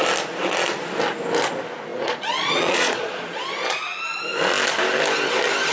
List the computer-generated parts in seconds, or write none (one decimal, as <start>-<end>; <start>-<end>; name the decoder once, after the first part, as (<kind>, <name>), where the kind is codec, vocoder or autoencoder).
1.9-3.4 (vocoder, Vocos)